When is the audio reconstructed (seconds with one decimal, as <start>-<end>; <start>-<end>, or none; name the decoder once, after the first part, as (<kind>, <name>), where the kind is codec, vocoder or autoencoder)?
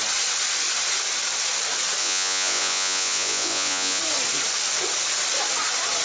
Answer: 2.0-4.0 (vocoder, Vocos)